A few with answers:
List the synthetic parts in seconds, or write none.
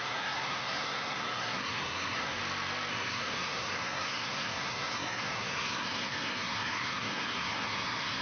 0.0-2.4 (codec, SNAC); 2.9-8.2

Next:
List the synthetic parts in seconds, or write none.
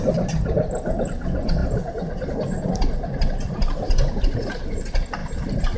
none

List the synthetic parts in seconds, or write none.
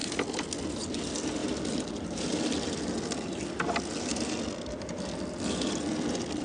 1.4-3.6 (vocoder, BigVGAN v2); 4.1-5.8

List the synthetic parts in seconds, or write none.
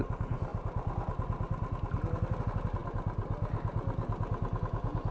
none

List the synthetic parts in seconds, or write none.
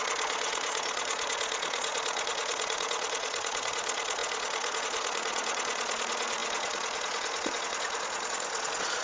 0.0-9.0 (vocoder, Vocos)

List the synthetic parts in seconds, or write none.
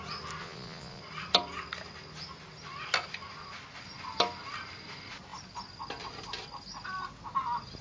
0.4-1.0 (vocoder, Vocos)